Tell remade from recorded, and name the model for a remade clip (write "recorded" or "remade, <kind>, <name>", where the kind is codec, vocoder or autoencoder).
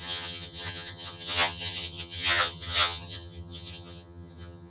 remade, vocoder, HiFi-GAN